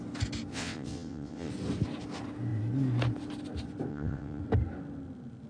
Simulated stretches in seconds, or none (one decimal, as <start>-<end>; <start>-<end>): 0.5-1.5; 3.9-4.4